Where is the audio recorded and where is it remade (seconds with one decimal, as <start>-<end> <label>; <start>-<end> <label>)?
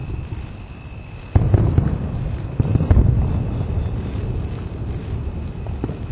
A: 0.0-6.1 recorded